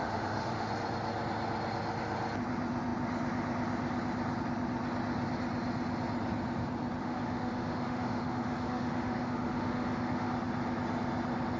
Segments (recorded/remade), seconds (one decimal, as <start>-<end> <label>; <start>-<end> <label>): 0.0-0.7 remade; 0.7-7.0 recorded; 7.0-10.3 remade; 10.3-11.6 recorded